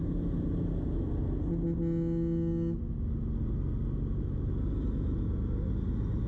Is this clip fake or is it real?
real